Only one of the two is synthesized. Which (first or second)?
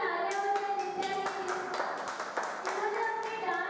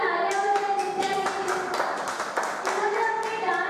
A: second